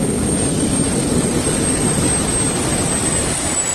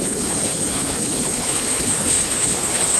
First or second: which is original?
first